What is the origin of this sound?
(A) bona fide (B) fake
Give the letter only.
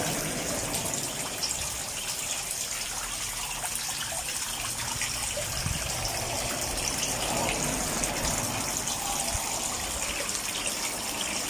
A